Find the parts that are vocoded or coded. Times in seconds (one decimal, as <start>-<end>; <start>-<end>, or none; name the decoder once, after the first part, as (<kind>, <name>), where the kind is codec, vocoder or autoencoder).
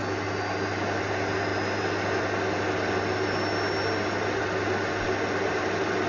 none